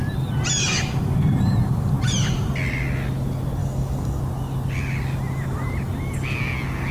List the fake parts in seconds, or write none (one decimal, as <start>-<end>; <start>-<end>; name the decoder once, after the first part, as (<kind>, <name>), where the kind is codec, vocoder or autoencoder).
3.6-4.2 (codec, DAC)